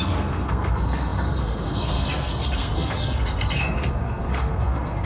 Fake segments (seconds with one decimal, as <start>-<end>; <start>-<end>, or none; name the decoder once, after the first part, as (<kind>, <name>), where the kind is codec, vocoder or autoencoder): 0.0-5.1 (codec, SNAC)